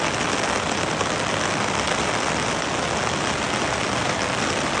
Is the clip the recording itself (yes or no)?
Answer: yes